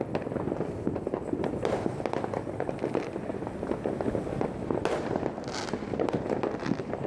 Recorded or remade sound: recorded